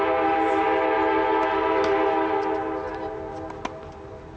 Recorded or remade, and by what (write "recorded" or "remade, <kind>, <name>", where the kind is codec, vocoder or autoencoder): recorded